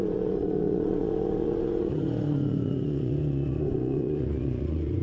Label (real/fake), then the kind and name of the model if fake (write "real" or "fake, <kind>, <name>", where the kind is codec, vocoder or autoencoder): fake, vocoder, Vocos